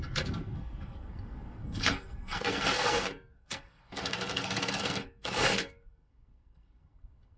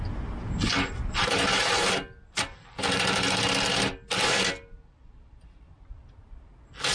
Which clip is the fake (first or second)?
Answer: first